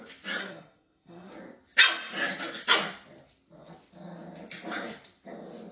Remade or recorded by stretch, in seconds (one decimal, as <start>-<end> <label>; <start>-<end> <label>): 0.0-0.4 recorded; 0.4-1.3 remade; 1.3-5.7 recorded